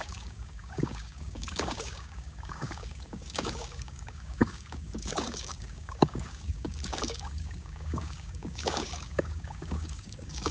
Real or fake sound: fake